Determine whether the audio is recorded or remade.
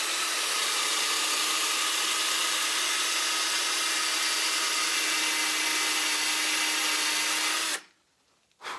recorded